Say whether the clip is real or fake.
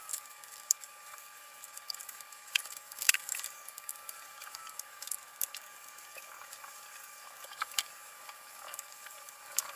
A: fake